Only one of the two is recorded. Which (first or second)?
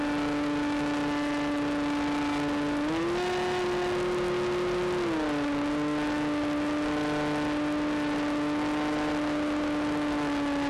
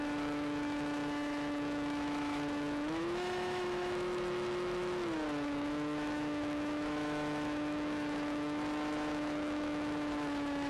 first